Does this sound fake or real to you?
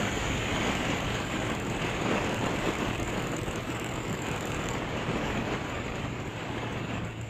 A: fake